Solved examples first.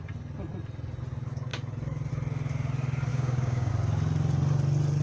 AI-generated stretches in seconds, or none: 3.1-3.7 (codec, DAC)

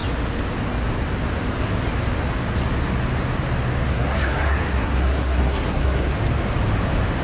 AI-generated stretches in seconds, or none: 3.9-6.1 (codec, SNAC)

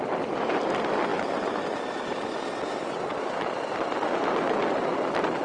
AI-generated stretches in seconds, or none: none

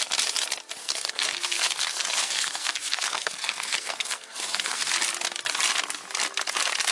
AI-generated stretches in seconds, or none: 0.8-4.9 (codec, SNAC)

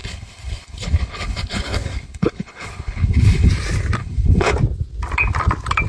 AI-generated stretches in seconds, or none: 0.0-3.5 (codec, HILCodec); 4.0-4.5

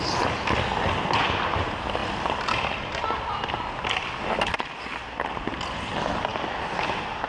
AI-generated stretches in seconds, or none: 2.0-3.0 (vocoder, BigVGAN v2)